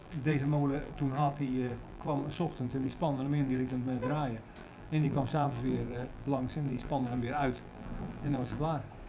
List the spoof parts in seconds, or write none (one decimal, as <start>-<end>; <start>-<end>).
0.0-4.1; 4.6-8.6